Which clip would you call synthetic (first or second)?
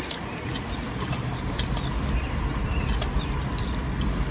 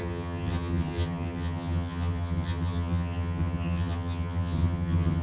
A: second